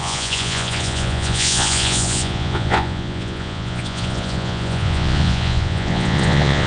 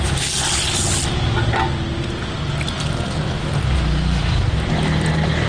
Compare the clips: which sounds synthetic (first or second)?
first